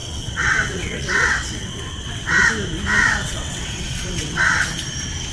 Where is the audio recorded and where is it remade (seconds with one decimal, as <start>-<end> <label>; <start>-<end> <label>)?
0.0-2.5 remade; 2.5-3.2 recorded; 3.2-4.4 remade; 4.4-5.3 recorded